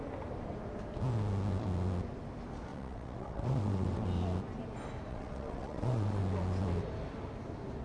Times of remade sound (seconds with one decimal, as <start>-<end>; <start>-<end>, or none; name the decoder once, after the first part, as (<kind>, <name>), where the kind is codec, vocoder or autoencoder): 2.7-4.0 (vocoder, WaveNeXt); 5.1-6.2